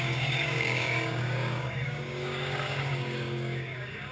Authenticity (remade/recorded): remade